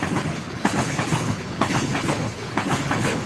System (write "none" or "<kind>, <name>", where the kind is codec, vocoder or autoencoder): codec, HILCodec